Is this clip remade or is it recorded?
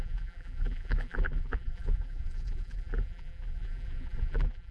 remade